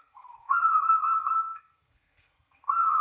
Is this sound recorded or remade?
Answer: remade